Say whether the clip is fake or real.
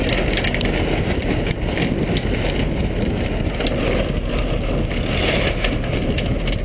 real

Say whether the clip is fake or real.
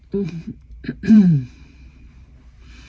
fake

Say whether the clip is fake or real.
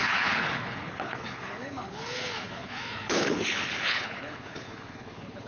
fake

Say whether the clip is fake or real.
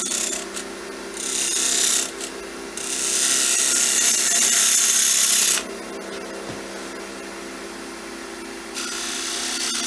real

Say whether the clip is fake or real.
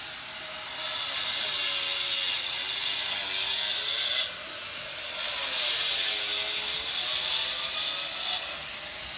real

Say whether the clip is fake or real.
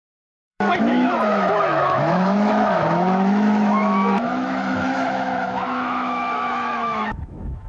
fake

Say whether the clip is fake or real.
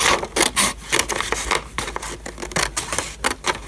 real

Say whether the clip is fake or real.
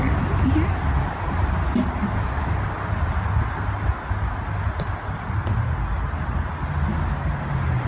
real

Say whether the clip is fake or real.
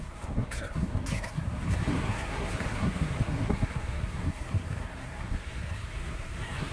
fake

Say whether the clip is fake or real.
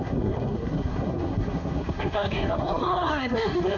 fake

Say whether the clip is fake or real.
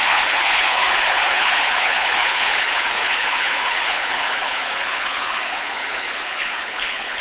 fake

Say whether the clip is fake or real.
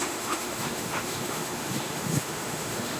fake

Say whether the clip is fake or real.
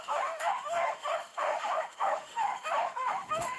fake